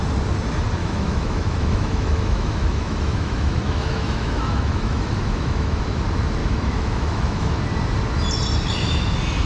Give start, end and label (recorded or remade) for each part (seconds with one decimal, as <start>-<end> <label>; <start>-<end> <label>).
0.0-0.8 recorded; 0.8-5.8 remade; 5.8-6.4 recorded; 6.4-7.6 remade; 7.6-9.5 recorded